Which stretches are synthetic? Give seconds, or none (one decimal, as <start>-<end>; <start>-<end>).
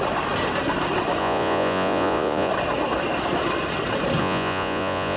1.2-2.5; 4.2-5.2